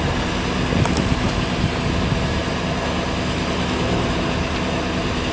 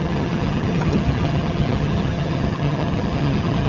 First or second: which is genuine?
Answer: first